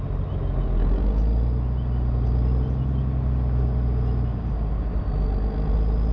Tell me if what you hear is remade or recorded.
recorded